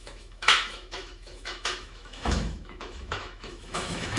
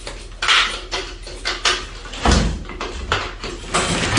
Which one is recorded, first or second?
second